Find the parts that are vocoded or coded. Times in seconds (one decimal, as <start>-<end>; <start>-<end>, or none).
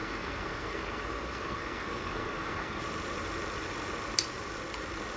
0.0-2.8